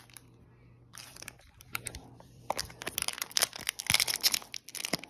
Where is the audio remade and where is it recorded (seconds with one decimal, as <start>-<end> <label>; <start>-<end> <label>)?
0.0-0.9 recorded; 0.9-2.6 remade; 2.6-3.1 recorded; 3.1-3.8 remade; 3.8-5.1 recorded